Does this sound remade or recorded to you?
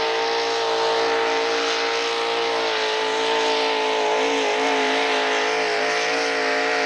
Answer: recorded